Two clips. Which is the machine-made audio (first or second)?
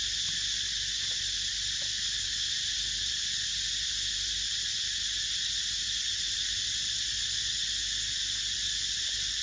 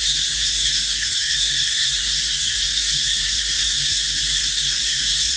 second